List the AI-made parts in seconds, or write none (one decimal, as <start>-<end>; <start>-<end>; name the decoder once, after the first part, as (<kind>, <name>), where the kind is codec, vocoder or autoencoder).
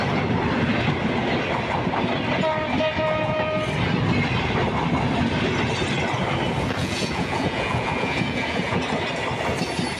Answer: 6.8-8.8 (vocoder, Vocos)